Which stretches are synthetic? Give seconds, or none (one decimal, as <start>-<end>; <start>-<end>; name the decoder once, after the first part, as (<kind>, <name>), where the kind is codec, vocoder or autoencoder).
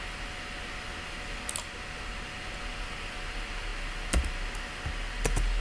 none